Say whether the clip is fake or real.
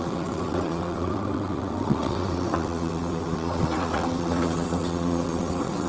fake